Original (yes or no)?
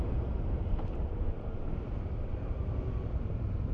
no